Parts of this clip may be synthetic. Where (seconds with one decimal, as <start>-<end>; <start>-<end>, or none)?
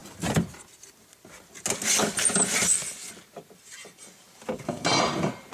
none